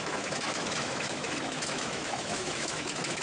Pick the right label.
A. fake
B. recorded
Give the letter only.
A